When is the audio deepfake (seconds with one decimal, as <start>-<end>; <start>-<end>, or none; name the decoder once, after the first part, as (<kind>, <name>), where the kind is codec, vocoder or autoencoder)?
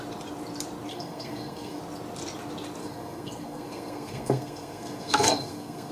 0.9-1.8 (codec, SNAC); 2.8-5.9